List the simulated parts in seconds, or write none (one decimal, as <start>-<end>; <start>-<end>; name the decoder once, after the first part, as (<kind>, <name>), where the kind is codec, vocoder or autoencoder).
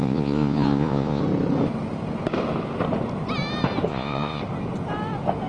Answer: 0.0-1.2 (vocoder, Vocos); 3.9-4.4